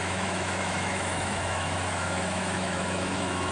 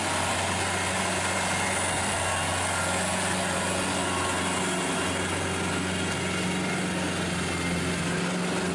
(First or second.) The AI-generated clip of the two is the first